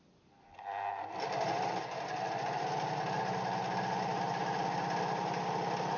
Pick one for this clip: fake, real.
real